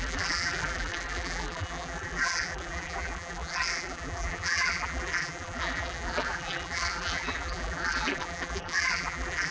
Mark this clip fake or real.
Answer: fake